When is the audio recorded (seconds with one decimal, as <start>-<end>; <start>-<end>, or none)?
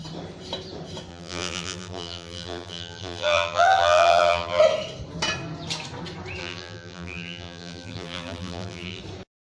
0.0-1.1; 4.6-6.4; 9.0-9.4